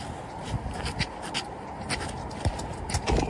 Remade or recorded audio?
recorded